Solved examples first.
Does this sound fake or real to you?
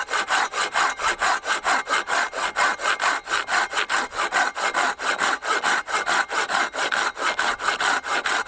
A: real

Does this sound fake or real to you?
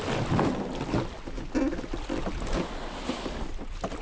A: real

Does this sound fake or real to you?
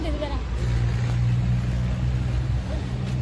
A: real